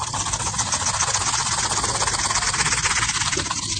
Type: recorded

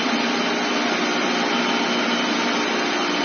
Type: recorded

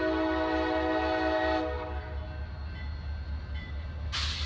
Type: recorded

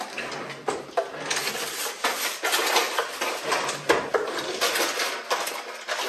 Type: recorded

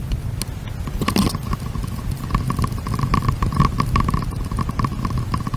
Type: recorded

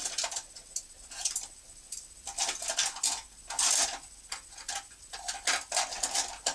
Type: recorded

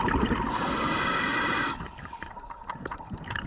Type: remade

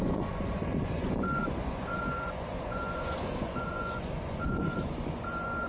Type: remade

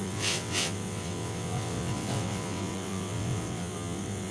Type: remade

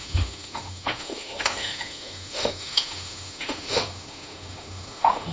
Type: remade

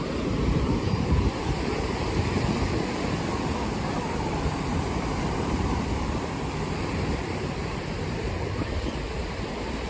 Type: remade